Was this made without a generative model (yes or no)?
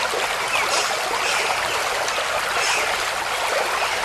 yes